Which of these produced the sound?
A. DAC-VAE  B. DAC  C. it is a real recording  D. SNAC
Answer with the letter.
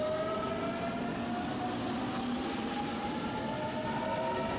C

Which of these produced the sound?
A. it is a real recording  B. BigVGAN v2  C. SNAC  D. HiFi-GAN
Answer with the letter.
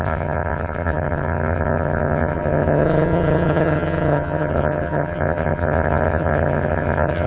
D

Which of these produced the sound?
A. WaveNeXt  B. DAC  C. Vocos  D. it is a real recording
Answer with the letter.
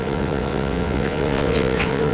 A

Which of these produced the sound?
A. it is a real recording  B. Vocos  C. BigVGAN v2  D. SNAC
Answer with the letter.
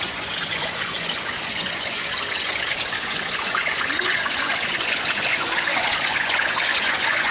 B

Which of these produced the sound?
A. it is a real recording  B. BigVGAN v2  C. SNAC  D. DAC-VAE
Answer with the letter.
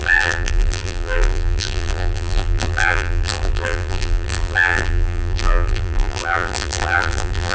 B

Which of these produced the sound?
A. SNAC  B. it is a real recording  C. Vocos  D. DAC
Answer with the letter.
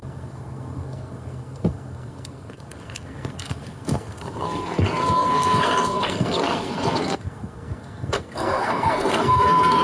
A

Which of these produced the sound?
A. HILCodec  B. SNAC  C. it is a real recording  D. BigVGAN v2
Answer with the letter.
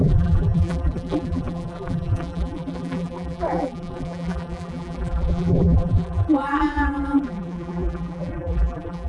D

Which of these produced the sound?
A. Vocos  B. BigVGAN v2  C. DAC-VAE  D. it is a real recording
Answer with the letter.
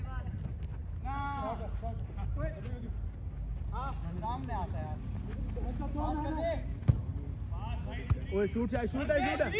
D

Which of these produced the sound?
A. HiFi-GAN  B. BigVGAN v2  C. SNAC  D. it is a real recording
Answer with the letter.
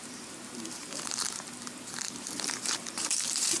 B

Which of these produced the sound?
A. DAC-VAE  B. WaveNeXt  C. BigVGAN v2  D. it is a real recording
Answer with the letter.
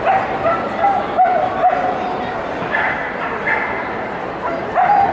C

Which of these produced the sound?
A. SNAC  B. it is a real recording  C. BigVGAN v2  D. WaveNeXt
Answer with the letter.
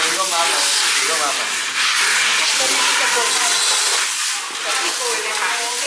B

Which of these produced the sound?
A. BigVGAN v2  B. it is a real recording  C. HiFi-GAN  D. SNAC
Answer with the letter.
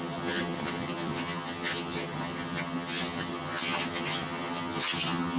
C